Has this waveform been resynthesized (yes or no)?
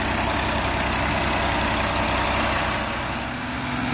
no